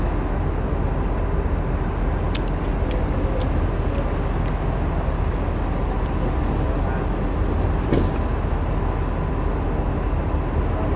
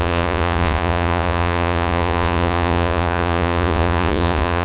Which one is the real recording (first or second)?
first